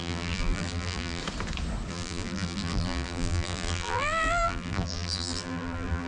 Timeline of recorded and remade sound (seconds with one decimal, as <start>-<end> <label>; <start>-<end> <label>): 0.0-1.2 remade; 1.2-1.9 recorded; 1.9-6.1 remade